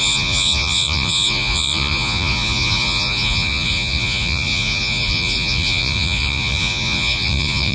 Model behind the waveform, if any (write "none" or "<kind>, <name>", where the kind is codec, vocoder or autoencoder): vocoder, Vocos